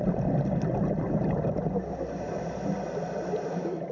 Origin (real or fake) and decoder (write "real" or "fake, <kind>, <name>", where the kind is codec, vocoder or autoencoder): real